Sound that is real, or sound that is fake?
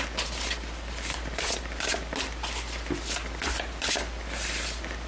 real